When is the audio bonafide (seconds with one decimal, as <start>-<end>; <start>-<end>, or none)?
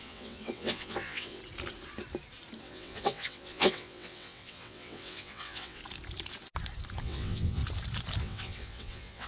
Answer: 1.4-2.6; 5.8-7.0; 7.6-8.2